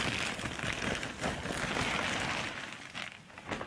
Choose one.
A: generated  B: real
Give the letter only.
B